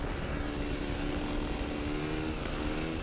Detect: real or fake real